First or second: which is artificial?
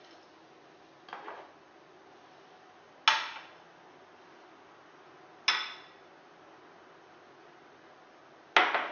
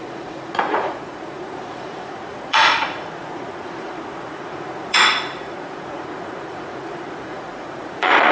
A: second